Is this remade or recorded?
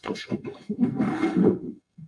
remade